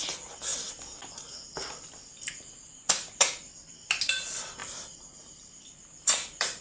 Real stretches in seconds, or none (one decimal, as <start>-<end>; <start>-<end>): none